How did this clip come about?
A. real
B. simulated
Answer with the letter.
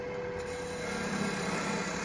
A